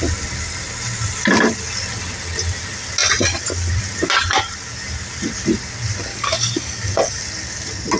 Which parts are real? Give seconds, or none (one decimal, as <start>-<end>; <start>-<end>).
0.0-6.1; 7.2-8.0